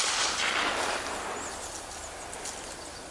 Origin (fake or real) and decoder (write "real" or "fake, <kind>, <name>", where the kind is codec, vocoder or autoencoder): real